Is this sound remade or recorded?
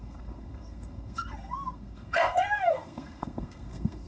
remade